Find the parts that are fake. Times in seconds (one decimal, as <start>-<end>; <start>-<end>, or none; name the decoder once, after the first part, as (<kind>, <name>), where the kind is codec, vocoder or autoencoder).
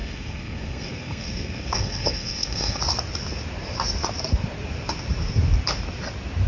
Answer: 0.0-2.8 (codec, SNAC)